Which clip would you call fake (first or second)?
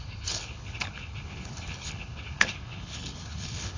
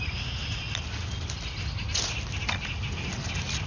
first